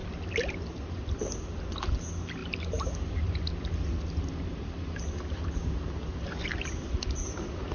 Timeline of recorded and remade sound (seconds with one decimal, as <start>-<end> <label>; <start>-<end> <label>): 0.0-7.7 recorded